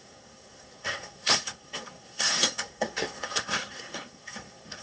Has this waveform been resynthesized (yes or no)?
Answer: yes